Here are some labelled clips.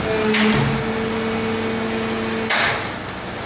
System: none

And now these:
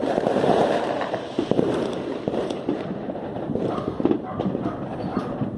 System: vocoder, BigVGAN v2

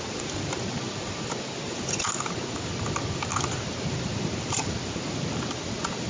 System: none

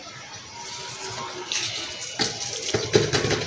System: none